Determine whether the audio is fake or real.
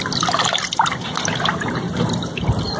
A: real